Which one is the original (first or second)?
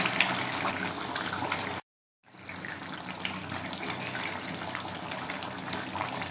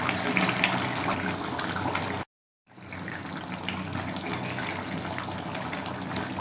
second